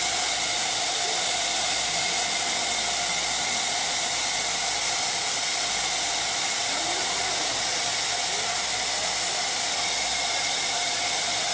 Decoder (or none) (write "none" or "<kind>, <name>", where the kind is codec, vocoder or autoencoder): none